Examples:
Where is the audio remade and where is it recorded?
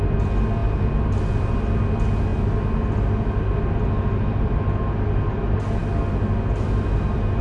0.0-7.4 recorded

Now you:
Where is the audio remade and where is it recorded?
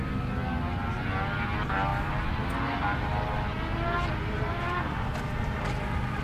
0.0-6.2 recorded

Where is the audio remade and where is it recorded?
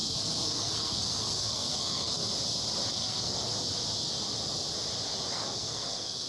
0.0-2.2 remade; 2.2-2.9 recorded; 2.9-3.5 remade; 3.5-5.3 recorded; 5.3-6.3 remade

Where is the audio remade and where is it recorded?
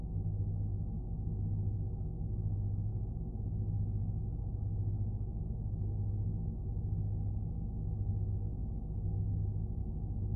0.0-8.6 remade; 8.6-9.2 recorded; 9.2-10.4 remade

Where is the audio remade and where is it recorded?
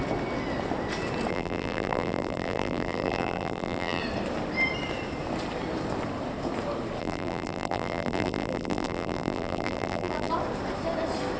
0.0-1.3 recorded; 1.3-4.0 remade; 4.0-7.0 recorded; 7.0-10.3 remade; 10.3-11.4 recorded